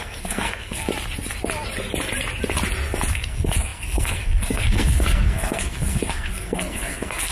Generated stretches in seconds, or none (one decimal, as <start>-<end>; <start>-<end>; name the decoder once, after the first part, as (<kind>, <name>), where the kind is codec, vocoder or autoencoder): 0.0-0.9 (codec, SNAC); 3.1-7.3